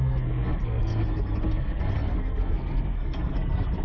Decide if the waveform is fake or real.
fake